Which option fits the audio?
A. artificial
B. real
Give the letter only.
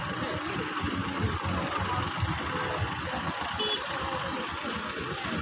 B